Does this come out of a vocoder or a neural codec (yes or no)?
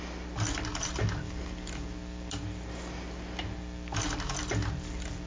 no